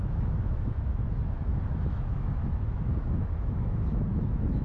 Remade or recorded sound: remade